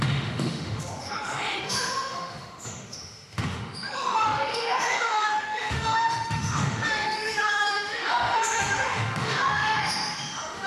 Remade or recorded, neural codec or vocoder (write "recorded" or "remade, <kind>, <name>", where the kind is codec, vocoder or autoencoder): remade, autoencoder, DAC-VAE